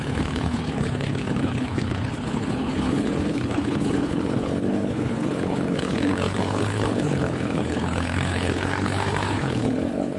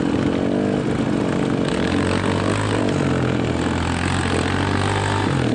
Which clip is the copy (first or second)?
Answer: first